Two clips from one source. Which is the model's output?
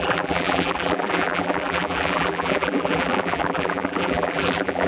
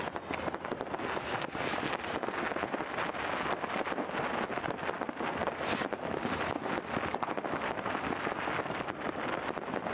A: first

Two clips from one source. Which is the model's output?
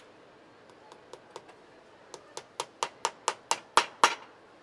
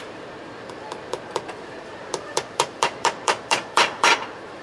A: second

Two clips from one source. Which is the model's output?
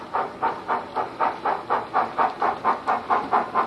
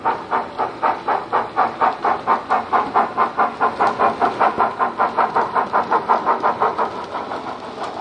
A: first